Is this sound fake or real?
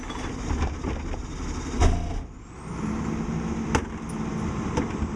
real